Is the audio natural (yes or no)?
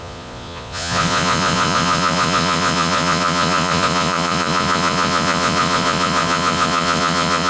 no